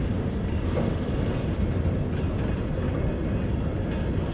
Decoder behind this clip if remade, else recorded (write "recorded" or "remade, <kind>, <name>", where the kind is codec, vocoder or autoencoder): recorded